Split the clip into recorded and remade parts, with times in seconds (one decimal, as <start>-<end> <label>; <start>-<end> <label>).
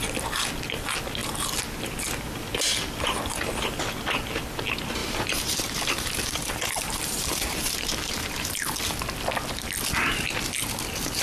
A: 0.0-5.0 recorded; 5.0-8.8 remade; 8.8-11.2 recorded